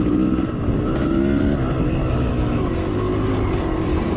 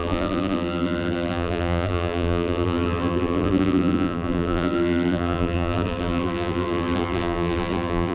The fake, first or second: second